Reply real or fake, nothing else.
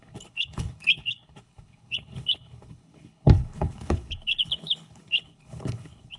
fake